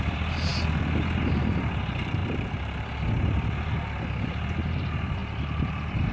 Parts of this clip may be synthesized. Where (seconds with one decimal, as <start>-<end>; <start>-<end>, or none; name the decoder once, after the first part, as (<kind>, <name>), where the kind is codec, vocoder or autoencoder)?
2.2-3.0 (vocoder, BigVGAN v2)